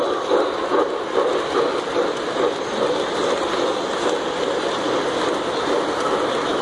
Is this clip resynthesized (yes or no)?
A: no